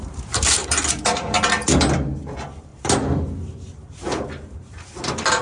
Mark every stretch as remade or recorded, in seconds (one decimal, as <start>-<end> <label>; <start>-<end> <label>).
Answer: 0.0-0.6 remade; 0.6-2.2 recorded; 2.2-2.7 remade; 2.7-4.5 recorded; 4.5-5.4 remade